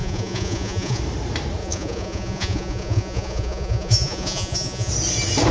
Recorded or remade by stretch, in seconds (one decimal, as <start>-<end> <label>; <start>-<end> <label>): 0.0-1.0 remade; 1.0-1.6 recorded; 1.6-4.9 remade; 4.9-5.5 recorded